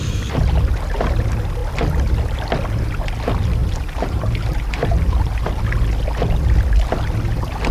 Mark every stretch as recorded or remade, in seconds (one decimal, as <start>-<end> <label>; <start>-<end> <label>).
0.0-3.6 recorded; 3.6-5.4 remade; 5.4-7.7 recorded